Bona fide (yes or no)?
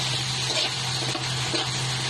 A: yes